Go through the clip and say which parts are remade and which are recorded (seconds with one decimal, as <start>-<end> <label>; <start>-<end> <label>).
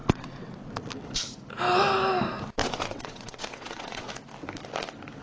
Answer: 0.0-0.7 remade; 0.7-2.6 recorded; 2.6-4.1 remade; 4.1-5.2 recorded